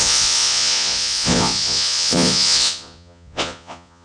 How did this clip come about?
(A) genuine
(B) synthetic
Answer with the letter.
B